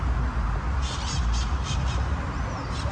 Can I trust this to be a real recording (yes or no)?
yes